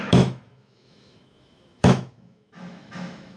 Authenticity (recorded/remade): remade